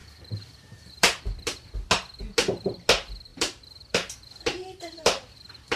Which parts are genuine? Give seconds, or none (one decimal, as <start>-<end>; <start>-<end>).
1.2-3.3